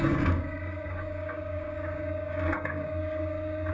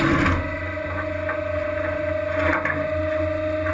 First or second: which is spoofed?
first